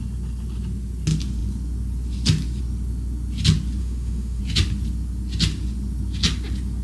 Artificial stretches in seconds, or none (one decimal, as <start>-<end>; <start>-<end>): 3.8-4.4